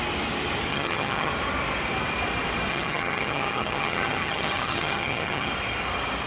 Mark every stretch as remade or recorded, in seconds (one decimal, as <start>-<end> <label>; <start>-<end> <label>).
0.0-0.7 recorded; 0.7-1.3 remade; 1.3-2.7 recorded; 2.7-5.5 remade; 5.5-6.3 recorded